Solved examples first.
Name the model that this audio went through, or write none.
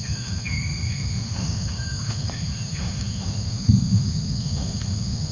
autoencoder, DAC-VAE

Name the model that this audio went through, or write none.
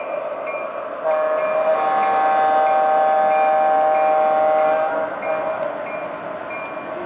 none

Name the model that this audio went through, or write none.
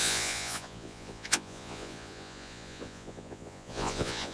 vocoder, Vocos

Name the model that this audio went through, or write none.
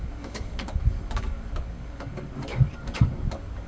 codec, DAC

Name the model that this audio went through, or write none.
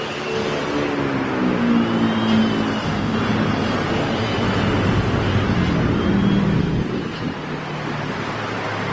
none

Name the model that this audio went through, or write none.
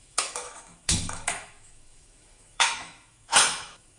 autoencoder, DAC-VAE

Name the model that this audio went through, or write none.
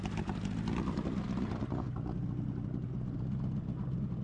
none